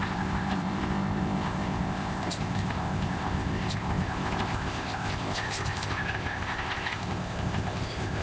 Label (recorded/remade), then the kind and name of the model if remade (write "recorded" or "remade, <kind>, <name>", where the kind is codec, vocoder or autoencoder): remade, codec, ZipCodec